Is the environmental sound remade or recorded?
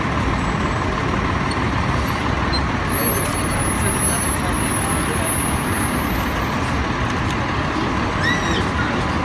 recorded